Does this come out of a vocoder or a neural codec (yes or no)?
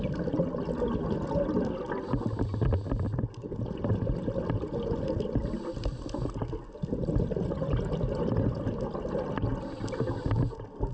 no